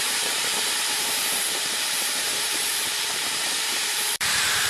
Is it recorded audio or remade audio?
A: remade